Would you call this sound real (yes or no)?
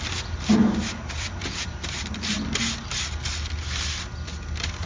yes